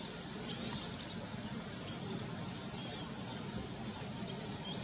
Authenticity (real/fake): real